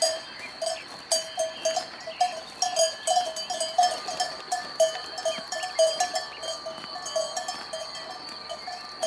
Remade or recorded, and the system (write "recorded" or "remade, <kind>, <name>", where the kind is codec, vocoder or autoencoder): recorded